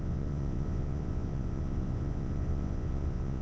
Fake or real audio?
fake